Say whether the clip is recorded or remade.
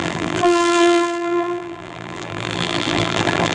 remade